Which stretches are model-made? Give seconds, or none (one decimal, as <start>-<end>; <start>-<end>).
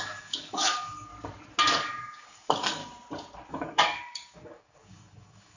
0.0-1.1; 1.6-2.8; 3.5-5.6